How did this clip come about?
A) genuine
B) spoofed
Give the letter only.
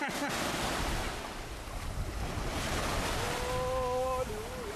A